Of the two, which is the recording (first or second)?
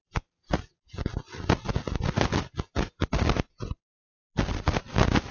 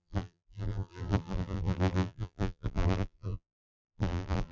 first